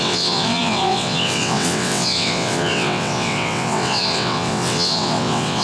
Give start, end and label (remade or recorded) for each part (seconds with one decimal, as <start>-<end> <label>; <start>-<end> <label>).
0.0-5.6 remade

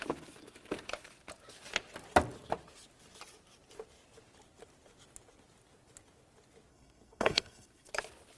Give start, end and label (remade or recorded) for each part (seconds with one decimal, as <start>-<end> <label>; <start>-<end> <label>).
0.0-6.7 recorded; 6.7-7.9 remade; 7.9-8.4 recorded

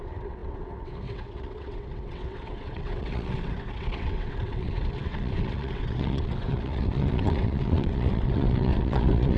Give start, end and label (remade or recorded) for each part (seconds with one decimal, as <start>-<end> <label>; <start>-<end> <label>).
0.0-9.4 remade